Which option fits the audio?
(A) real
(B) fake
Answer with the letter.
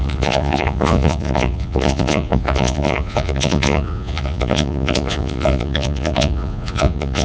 B